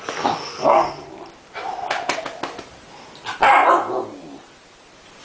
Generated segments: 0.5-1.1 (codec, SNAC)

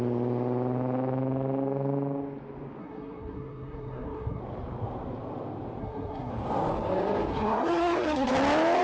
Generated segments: 2.8-4.4 (codec, SNAC); 5.8-6.3; 7.3-8.3

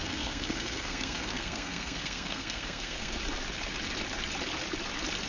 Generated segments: 0.0-3.2 (codec, SNAC)

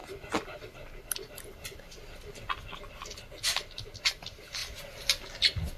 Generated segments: none

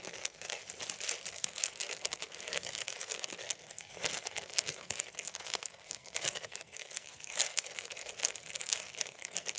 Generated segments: 0.0-0.6 (codec, SNAC); 1.3-9.6